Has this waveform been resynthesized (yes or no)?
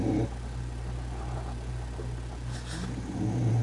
no